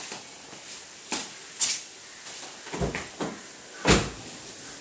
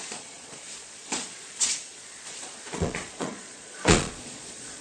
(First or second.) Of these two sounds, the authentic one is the first